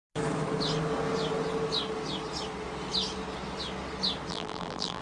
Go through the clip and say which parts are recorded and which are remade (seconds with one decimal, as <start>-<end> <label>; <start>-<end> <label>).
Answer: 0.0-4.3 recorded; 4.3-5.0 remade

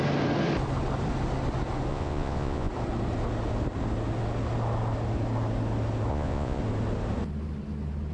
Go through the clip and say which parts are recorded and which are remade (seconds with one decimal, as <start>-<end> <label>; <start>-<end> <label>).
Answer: 0.0-1.9 recorded; 1.9-2.7 remade; 2.7-6.1 recorded; 6.1-6.6 remade; 6.6-8.1 recorded

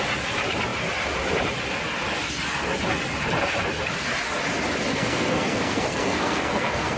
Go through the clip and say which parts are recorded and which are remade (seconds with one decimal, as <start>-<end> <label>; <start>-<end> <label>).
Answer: 0.0-4.9 recorded; 4.9-7.0 remade

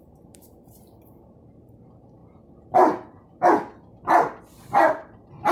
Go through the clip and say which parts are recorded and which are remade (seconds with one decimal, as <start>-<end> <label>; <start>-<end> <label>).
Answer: 0.0-2.2 remade; 2.2-4.4 recorded; 4.4-5.5 remade